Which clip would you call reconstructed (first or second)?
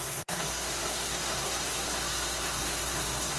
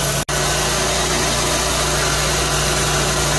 first